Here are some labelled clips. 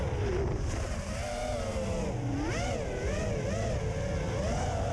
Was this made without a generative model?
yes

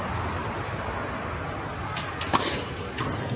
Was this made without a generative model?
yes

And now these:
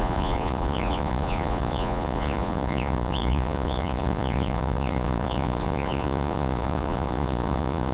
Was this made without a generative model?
no